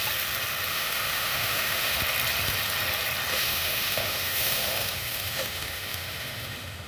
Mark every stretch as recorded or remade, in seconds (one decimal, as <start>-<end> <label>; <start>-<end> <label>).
0.0-0.7 recorded; 0.7-2.0 remade; 2.0-3.3 recorded; 3.3-6.9 remade